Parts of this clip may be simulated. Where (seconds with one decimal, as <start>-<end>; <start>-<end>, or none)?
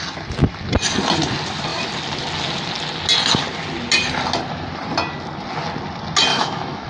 6.3-6.9